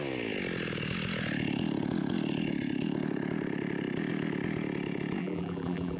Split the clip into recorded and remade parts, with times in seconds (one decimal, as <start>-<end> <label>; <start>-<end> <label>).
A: 0.0-5.2 recorded; 5.2-6.0 remade

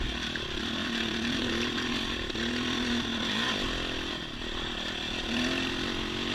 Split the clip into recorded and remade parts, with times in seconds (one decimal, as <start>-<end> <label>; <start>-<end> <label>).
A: 0.0-0.8 recorded; 0.8-1.5 remade; 1.5-6.3 recorded

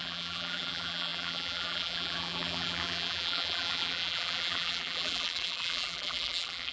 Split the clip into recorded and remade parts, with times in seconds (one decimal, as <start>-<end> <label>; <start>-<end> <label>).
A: 0.0-6.7 remade